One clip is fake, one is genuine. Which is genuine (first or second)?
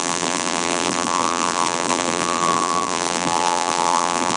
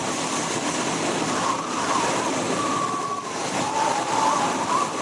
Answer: second